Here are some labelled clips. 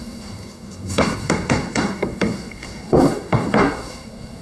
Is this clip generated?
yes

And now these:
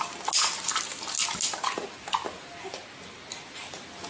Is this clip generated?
no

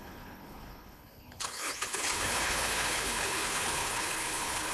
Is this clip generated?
yes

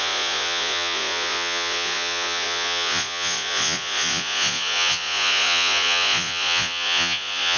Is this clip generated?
yes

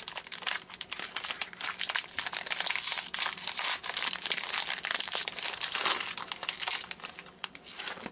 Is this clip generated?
no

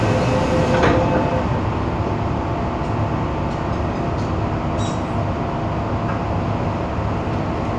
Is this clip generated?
no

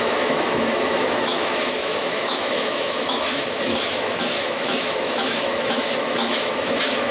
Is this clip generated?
yes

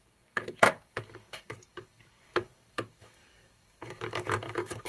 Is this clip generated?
yes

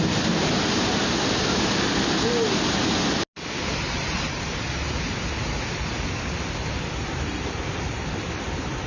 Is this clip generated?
no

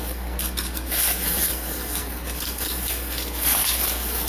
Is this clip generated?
yes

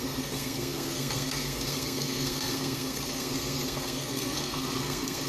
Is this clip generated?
yes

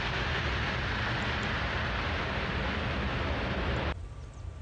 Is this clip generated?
no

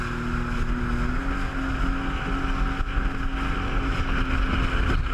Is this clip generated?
no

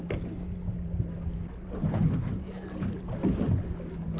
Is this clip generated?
no